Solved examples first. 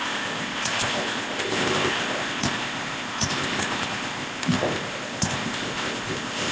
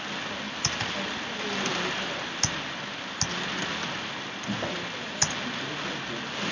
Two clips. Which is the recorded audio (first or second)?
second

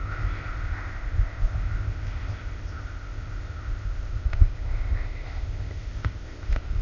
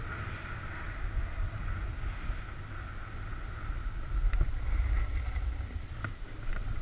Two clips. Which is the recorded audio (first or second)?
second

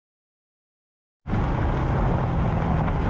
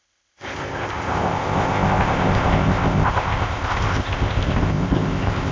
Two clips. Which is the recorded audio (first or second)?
first